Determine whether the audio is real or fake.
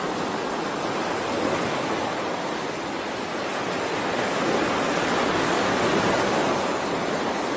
real